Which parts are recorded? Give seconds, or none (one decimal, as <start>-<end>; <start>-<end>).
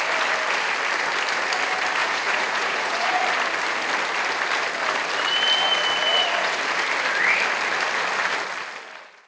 0.0-2.0; 3.2-6.1; 6.6-9.3